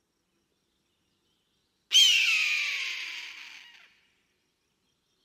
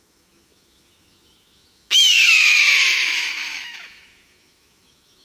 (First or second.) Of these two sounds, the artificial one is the second